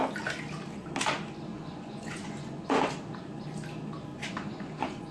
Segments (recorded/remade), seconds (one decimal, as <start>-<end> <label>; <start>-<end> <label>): 0.0-1.5 recorded; 1.5-2.9 remade; 2.9-4.1 recorded; 4.1-5.1 remade